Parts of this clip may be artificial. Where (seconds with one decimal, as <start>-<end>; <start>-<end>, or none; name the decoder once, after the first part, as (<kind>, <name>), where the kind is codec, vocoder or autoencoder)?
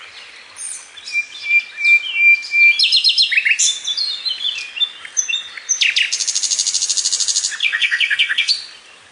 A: 7.6-8.5 (codec, SNAC)